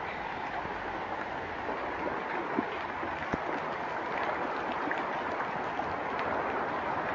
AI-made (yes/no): no